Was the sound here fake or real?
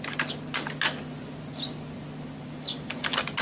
real